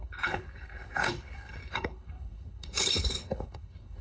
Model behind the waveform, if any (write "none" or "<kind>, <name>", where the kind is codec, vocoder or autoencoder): codec, HILCodec